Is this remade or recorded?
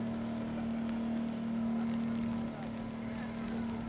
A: recorded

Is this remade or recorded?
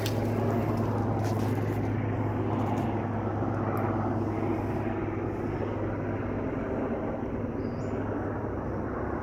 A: recorded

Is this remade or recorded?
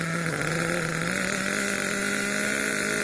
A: recorded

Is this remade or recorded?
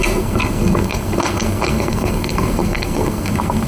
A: remade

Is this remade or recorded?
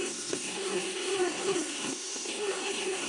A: remade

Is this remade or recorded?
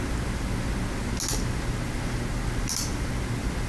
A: recorded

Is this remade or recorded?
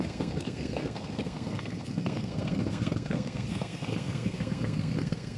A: remade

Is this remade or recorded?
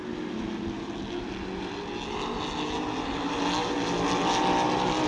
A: recorded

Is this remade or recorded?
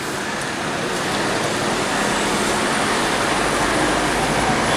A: recorded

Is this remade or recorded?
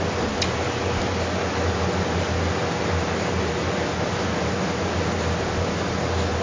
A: recorded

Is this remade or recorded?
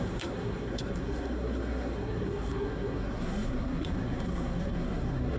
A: remade